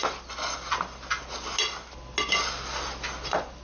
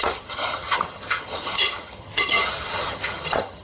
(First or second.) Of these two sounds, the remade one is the second